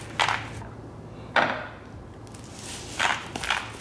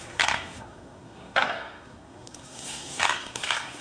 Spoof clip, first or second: second